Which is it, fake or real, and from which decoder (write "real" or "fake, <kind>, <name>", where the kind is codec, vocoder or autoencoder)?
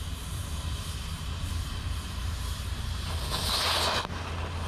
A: real